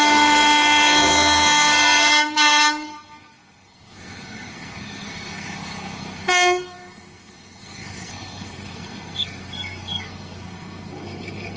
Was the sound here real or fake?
fake